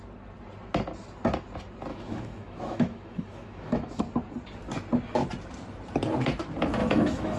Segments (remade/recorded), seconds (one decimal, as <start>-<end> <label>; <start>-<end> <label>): 0.0-1.9 recorded; 1.9-4.0 remade; 4.0-6.8 recorded; 6.8-7.4 remade